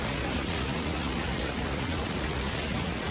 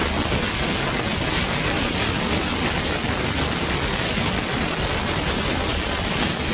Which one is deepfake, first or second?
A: first